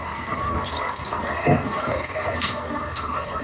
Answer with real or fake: fake